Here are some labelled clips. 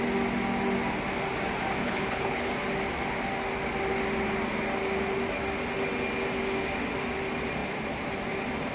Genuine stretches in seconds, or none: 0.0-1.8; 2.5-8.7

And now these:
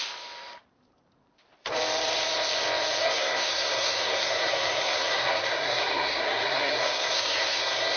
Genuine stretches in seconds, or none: 0.0-3.0

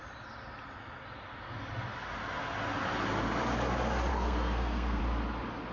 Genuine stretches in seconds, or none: 0.0-4.1; 5.0-5.7

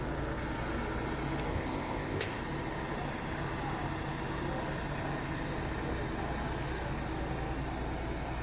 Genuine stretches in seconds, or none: 0.0-1.5; 2.4-8.4

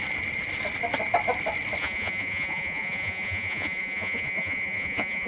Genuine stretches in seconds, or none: 0.0-1.8

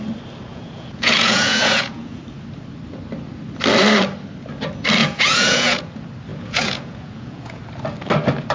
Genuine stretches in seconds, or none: 0.0-0.5; 2.2-5.0; 5.8-6.3; 7.6-8.5

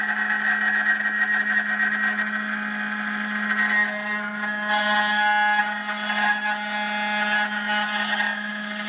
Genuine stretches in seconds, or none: 0.0-8.9

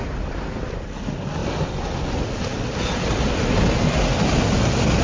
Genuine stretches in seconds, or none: 0.0-5.0